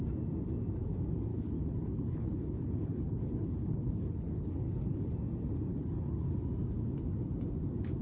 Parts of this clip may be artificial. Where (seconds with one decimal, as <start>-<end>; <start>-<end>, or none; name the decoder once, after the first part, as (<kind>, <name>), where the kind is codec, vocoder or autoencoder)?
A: 1.3-5.1 (codec, HILCodec); 5.7-6.4